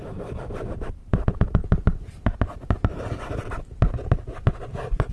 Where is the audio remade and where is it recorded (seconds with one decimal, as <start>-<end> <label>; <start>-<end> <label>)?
0.0-5.1 recorded